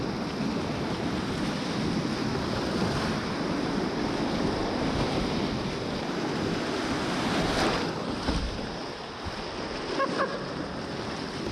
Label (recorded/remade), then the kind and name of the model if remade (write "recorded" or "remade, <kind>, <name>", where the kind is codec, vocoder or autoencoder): recorded